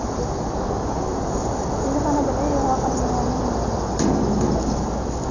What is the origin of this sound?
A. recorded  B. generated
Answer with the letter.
A